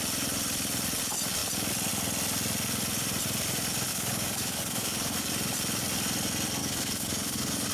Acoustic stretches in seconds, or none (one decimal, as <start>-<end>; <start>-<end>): 0.0-3.9; 5.3-6.6